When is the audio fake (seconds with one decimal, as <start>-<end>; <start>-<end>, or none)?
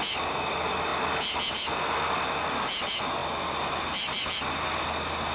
none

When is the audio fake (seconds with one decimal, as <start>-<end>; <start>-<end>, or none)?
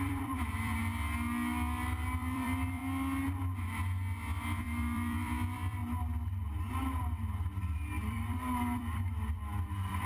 0.0-0.8; 2.1-2.8; 4.6-5.8; 6.7-10.1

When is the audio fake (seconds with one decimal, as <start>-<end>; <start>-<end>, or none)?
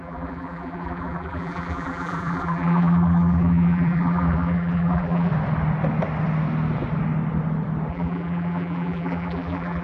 0.0-5.3; 7.9-9.8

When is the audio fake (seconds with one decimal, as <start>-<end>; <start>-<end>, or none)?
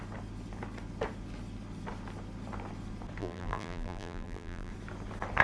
3.2-4.7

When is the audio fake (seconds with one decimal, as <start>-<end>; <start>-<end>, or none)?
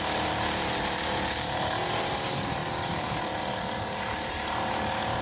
0.0-2.6; 3.8-5.2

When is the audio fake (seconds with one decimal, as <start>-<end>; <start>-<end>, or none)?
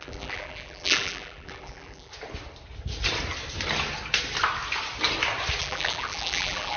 0.0-2.1; 5.6-6.8